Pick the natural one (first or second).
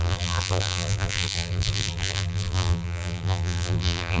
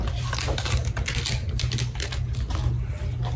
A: second